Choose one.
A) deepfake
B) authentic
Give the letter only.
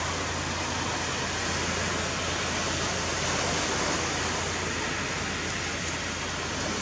B